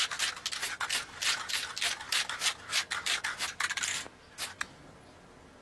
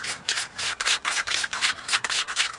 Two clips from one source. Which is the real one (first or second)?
first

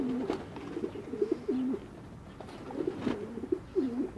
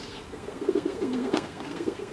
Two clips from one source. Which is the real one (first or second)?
first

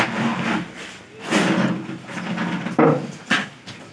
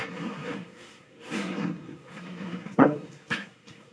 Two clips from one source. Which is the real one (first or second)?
first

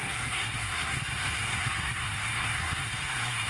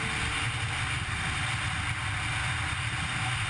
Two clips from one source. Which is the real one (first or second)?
second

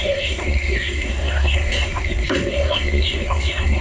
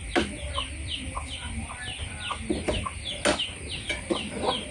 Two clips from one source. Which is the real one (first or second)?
second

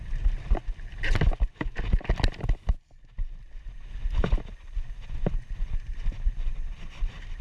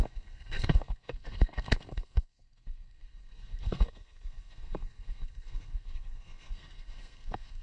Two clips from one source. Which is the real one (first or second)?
first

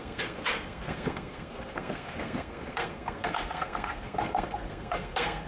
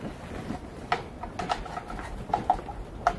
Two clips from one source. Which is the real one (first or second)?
second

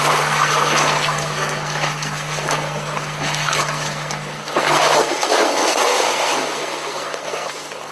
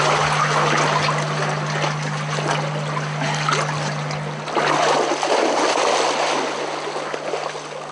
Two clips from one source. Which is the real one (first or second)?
second